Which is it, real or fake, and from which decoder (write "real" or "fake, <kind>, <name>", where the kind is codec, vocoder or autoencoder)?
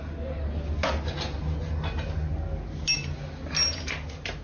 real